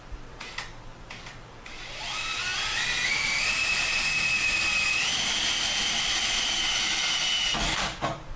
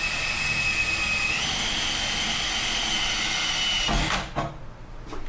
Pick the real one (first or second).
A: second